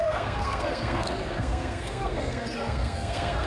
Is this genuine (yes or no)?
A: no